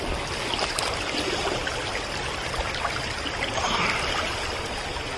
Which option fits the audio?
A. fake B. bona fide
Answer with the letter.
B